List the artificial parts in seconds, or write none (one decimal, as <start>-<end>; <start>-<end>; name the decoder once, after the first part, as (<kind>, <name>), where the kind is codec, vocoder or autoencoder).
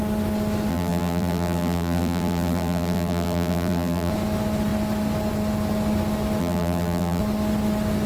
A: 0.7-4.1 (vocoder, BigVGAN v2); 6.4-7.2